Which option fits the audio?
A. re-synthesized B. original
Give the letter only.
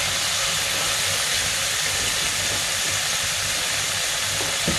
B